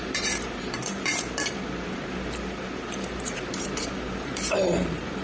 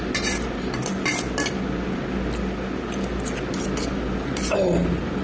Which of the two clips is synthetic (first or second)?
first